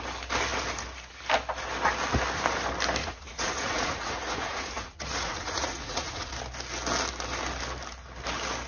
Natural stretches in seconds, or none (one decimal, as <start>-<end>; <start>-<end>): 0.0-3.0; 6.3-8.7